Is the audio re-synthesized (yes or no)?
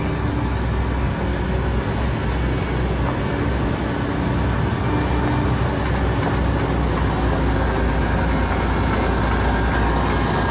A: no